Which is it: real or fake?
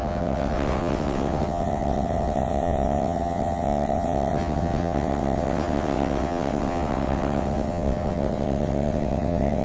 fake